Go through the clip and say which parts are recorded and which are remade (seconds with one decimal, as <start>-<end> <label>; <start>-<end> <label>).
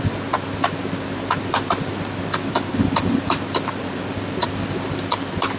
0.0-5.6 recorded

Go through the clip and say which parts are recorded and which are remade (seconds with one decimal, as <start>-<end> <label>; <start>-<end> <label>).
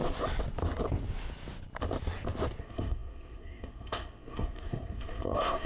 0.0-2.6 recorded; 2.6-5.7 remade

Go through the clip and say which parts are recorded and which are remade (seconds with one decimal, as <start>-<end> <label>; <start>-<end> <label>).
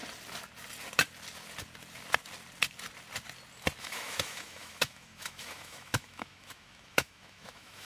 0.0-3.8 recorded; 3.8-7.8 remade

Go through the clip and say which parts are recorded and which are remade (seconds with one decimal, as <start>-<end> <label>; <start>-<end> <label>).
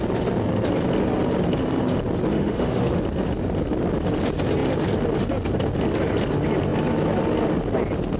0.0-2.3 recorded; 2.3-3.0 remade; 3.0-8.2 recorded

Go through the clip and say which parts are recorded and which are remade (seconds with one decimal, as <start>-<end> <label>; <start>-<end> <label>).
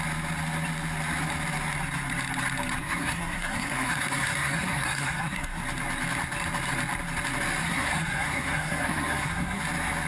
0.0-2.8 recorded; 2.8-5.6 remade; 5.6-7.6 recorded; 7.6-9.6 remade; 9.6-10.1 recorded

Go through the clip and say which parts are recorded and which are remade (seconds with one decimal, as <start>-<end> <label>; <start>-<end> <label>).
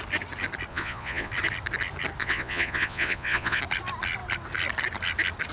0.0-0.7 recorded; 0.7-1.3 remade; 1.3-2.2 recorded; 2.2-3.6 remade; 3.6-5.5 recorded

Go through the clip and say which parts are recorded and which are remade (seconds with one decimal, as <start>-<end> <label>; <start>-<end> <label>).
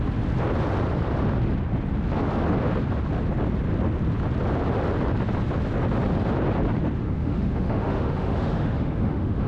0.0-7.0 recorded; 7.0-9.5 remade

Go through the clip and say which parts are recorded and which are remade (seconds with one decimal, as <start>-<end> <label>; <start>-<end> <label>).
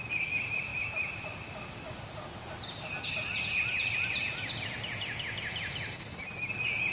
0.0-6.9 recorded